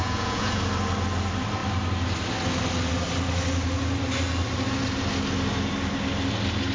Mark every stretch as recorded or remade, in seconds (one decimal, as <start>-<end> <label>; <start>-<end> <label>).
0.0-0.6 remade; 0.6-6.7 recorded